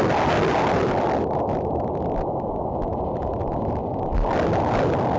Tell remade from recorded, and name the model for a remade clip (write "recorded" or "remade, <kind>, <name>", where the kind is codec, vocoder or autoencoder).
recorded